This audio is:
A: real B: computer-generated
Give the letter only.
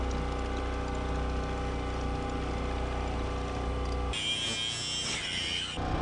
A